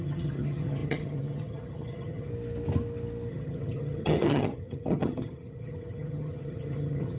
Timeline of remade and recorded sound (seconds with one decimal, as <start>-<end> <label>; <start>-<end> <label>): 0.0-2.3 remade; 2.3-3.3 recorded; 3.3-7.2 remade

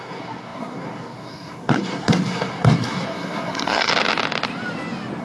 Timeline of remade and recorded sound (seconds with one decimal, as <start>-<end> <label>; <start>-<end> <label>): 0.0-3.9 remade; 3.9-5.2 recorded

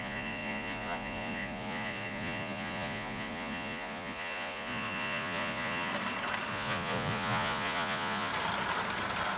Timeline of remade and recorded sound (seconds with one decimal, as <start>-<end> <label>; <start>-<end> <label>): 0.0-5.9 remade; 5.9-6.5 recorded; 6.5-8.3 remade; 8.3-9.4 recorded